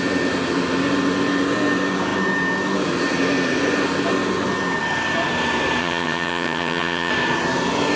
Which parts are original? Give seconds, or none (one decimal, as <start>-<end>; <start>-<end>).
0.0-5.8; 7.1-8.0